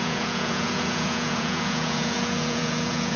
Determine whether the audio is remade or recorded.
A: remade